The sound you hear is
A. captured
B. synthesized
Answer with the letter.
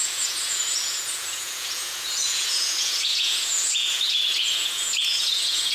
B